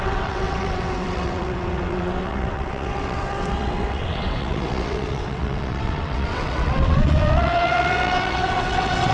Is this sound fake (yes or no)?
yes